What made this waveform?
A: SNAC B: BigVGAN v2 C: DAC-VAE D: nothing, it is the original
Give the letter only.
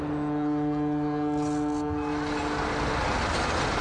D